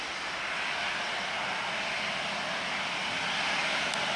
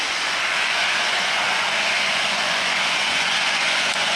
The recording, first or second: first